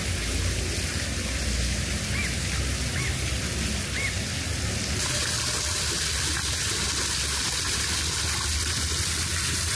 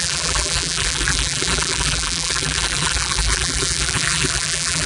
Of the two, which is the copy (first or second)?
second